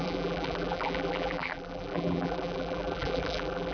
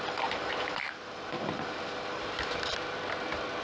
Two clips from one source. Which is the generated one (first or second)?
first